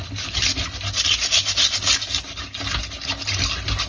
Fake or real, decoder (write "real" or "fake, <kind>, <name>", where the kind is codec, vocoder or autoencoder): real